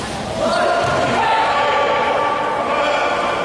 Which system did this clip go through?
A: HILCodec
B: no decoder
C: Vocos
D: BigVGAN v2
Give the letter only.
B